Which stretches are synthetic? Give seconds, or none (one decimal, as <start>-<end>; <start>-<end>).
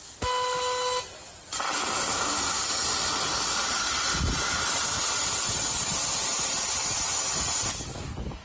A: none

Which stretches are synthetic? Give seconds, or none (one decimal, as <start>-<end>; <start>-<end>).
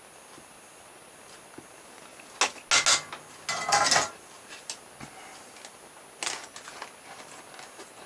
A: none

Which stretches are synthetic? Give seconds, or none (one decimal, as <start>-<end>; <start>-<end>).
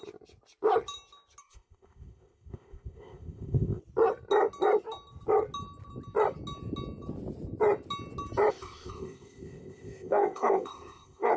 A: 1.4-3.8; 8.5-11.4